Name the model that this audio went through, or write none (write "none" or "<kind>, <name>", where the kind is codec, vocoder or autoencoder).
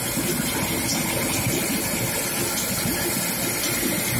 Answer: none